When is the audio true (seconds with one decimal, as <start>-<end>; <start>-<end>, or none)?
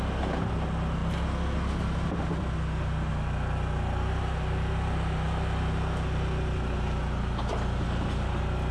0.0-8.7